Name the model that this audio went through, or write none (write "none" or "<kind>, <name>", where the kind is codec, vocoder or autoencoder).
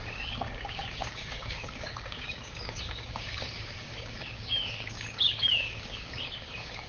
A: codec, DAC